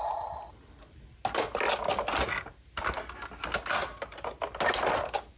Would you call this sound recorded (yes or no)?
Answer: yes